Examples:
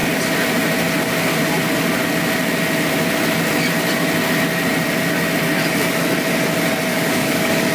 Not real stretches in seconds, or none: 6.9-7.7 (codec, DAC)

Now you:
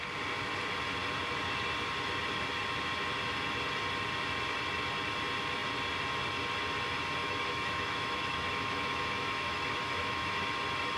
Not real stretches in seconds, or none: 7.2-10.5 (autoencoder, DAC-VAE)

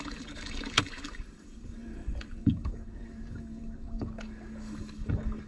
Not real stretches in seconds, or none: 0.0-5.5 (codec, DAC)

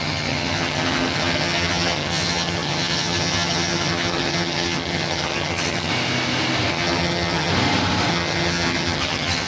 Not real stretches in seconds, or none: 0.0-5.9 (vocoder, HiFi-GAN); 6.7-7.5; 8.1-9.5

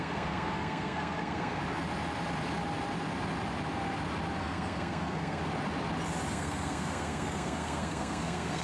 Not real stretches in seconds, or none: 0.0-1.6 (codec, SNAC); 4.4-5.4; 6.3-8.6

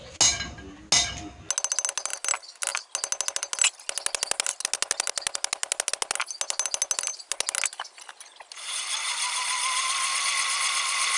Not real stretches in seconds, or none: none

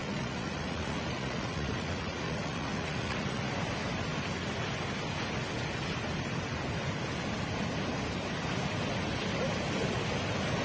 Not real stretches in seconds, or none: 0.0-3.5 (vocoder, Vocos)